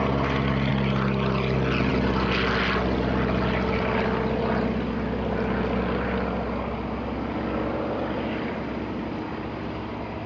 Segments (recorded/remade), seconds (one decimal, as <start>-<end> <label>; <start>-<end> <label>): 0.0-10.3 recorded